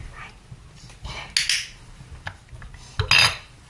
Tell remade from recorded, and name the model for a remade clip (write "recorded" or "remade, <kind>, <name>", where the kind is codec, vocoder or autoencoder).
recorded